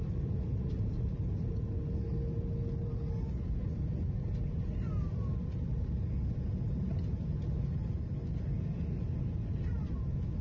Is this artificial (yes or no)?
no